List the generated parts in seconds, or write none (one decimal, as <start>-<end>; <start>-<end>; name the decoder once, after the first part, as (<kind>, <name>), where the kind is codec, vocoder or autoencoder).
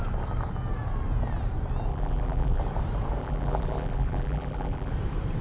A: 1.9-2.6 (vocoder, BigVGAN v2); 3.2-4.9